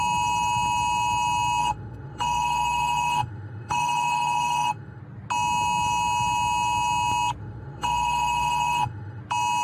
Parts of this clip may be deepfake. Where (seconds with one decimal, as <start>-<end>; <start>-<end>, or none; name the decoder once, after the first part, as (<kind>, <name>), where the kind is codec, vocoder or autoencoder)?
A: 1.6-5.0 (autoencoder, DAC-VAE); 7.4-9.2